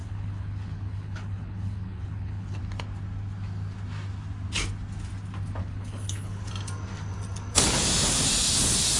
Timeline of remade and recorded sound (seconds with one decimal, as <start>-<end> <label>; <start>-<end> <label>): 0.0-2.6 remade; 2.6-5.6 recorded; 5.6-6.5 remade; 6.5-9.0 recorded